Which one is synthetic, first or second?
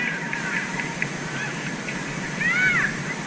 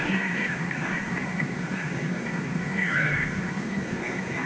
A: second